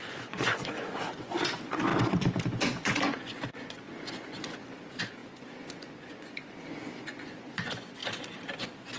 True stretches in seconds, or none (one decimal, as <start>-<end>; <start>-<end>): 8.0-8.6